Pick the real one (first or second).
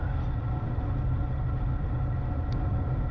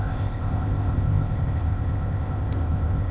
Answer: first